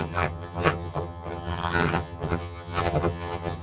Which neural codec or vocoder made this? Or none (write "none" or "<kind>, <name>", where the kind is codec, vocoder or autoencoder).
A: vocoder, HiFi-GAN